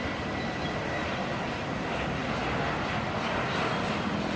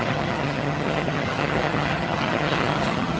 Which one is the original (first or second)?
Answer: first